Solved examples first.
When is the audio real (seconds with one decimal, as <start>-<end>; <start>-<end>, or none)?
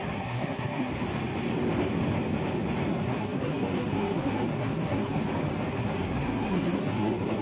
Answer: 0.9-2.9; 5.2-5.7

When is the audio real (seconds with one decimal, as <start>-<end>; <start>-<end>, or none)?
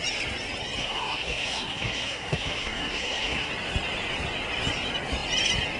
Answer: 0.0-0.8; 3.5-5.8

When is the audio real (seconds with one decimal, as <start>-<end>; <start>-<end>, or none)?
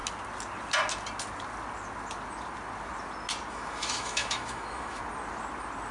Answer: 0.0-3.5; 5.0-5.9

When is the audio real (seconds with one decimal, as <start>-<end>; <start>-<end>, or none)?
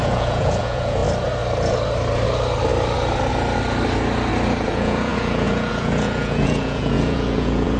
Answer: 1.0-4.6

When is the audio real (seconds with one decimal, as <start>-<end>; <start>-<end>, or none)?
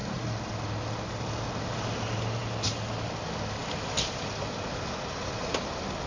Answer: 0.0-6.1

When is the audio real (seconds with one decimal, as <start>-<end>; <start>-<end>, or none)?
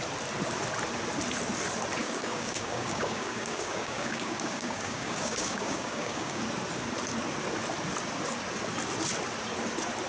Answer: 0.0-2.0; 6.4-10.1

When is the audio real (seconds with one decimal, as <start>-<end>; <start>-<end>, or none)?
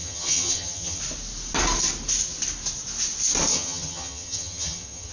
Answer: 1.0-3.5